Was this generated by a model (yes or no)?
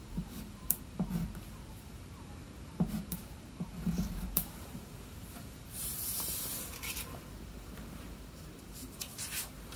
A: yes